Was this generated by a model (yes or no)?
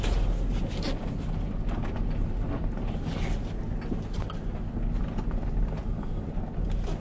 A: no